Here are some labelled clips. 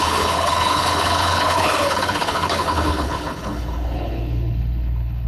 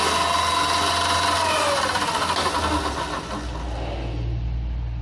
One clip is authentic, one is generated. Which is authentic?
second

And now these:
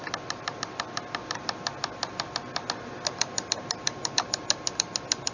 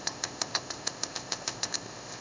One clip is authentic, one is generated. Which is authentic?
first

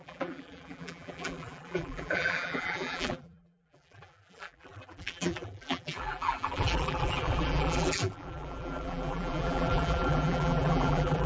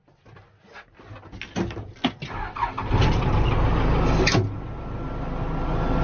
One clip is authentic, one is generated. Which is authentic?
second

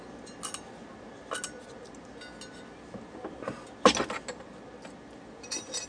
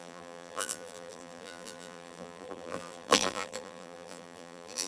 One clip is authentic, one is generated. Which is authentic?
first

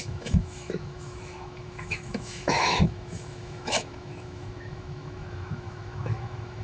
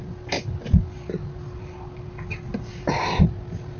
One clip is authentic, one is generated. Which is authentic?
second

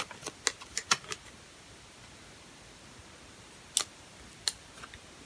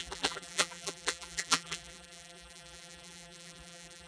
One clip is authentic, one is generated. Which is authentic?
first